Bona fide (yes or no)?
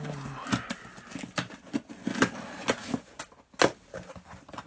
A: yes